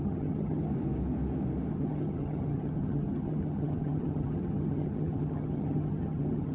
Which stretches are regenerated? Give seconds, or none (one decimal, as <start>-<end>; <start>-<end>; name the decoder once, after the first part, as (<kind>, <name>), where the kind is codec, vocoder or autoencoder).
0.0-0.7 (vocoder, HiFi-GAN); 1.7-6.5